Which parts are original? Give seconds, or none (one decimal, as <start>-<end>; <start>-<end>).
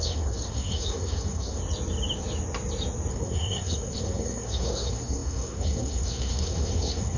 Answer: 1.6-3.1